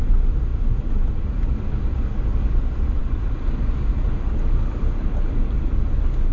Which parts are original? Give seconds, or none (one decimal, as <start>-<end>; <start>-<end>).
0.5-1.6; 3.0-3.9